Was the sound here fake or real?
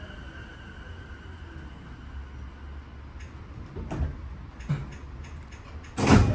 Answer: real